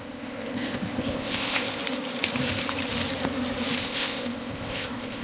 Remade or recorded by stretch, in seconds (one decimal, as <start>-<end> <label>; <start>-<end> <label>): 0.0-1.8 remade; 1.8-3.8 recorded; 3.8-5.2 remade